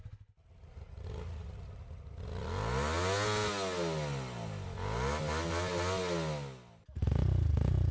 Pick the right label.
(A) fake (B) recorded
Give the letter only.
B